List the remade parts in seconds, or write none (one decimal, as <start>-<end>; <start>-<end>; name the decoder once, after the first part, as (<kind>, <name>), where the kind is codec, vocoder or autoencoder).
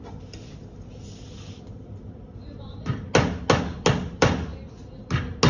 1.7-3.1 (vocoder, BigVGAN v2); 4.0-4.5